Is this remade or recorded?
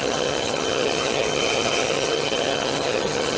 remade